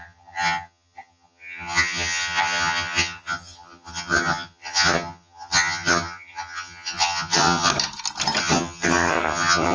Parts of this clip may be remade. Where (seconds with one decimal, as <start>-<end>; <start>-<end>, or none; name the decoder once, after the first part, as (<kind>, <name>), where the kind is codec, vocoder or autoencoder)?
0.0-7.7 (vocoder, HiFi-GAN); 8.4-9.7